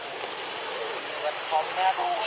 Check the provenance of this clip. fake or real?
real